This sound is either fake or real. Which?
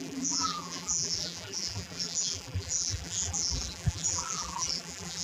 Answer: fake